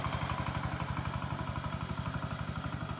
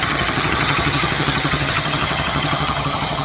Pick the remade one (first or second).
second